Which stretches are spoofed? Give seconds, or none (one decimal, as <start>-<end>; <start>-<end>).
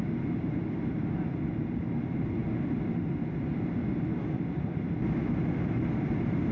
none